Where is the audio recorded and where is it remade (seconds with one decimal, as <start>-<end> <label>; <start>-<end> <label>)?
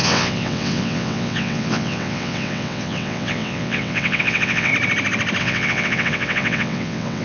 0.0-4.7 remade; 4.7-5.4 recorded; 5.4-7.2 remade